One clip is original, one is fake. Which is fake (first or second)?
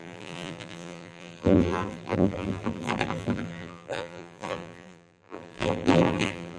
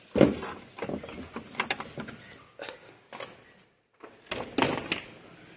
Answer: first